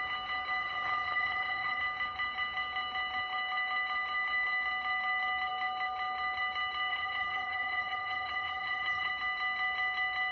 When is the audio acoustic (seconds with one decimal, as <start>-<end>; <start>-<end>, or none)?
0.0-0.6; 1.8-6.9; 9.1-10.3